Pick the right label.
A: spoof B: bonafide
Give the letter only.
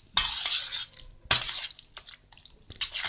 B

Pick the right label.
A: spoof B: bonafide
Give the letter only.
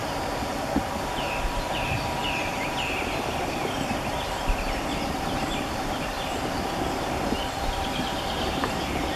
A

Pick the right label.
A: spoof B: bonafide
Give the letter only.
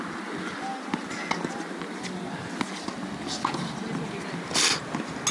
B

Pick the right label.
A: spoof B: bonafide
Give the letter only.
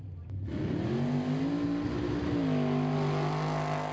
B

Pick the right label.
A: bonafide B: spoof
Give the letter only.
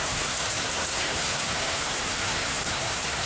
B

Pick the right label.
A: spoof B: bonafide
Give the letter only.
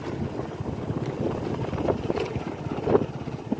B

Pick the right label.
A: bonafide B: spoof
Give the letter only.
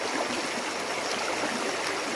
A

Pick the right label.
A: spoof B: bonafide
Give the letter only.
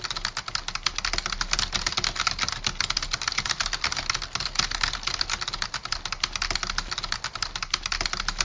B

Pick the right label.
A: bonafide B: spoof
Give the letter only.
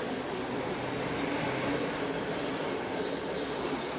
A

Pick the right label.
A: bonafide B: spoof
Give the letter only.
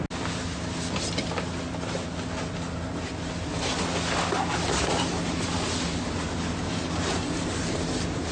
A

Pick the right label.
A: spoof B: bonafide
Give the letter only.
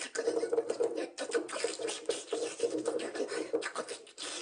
B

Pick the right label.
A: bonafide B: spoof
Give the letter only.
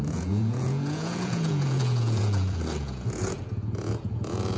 B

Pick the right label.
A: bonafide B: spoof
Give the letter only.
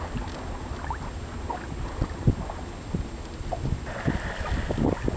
A